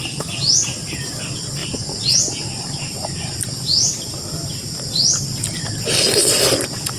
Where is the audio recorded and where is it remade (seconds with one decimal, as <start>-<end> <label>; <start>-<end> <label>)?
0.0-1.6 recorded; 1.6-2.4 remade; 2.4-7.0 recorded